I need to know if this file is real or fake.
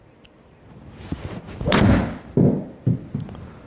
real